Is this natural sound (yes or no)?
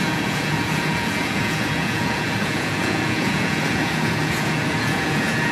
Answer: no